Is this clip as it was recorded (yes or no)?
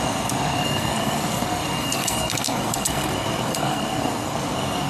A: no